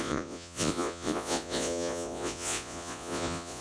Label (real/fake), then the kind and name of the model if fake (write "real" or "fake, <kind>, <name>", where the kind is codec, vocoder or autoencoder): fake, vocoder, Vocos